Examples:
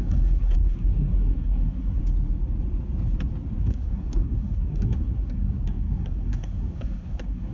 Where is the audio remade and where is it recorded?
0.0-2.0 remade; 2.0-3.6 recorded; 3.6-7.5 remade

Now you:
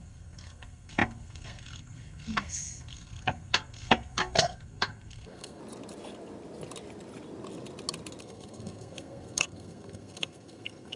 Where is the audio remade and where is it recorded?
0.0-5.6 remade; 5.6-8.2 recorded; 8.2-11.0 remade

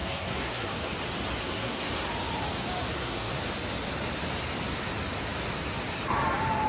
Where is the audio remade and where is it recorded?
0.0-0.8 remade; 0.8-1.4 recorded; 1.4-2.1 remade; 2.1-2.9 recorded; 2.9-3.4 remade; 3.4-6.7 recorded

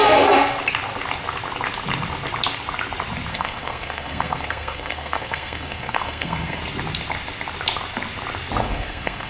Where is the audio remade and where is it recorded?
0.0-3.3 recorded; 3.3-6.6 remade; 6.6-8.6 recorded; 8.6-9.3 remade